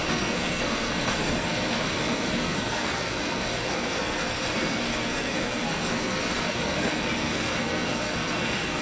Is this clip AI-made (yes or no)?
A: yes